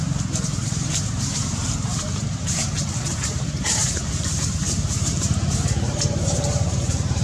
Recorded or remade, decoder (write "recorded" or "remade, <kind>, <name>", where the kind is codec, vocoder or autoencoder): remade, vocoder, BigVGAN v2